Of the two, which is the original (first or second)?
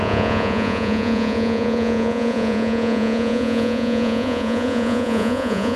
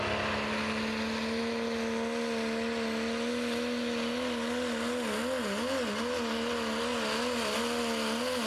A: second